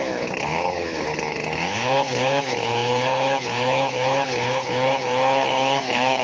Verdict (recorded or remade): remade